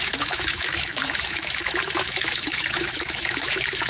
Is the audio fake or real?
fake